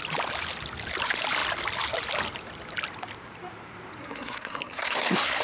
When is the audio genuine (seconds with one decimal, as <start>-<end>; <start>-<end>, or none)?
0.0-4.0

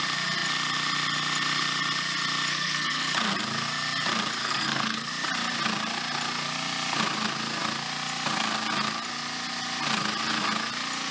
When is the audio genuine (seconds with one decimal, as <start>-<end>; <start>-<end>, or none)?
0.0-2.5; 3.1-4.4; 5.1-11.1

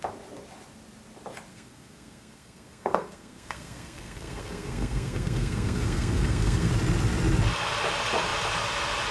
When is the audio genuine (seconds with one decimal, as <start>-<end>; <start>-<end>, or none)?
0.0-1.5; 6.7-9.1

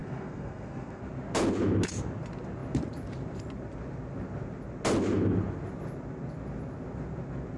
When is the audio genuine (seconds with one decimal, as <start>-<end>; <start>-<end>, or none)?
1.0-7.6

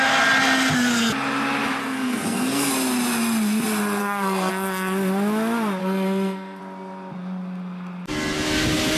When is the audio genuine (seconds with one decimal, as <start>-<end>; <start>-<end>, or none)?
0.0-1.8; 2.7-4.0; 4.5-5.8; 6.6-9.0

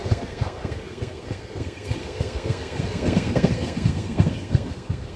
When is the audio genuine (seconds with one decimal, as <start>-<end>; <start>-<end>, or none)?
none

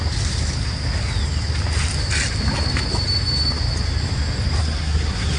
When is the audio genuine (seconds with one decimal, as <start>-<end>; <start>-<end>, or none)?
0.0-4.6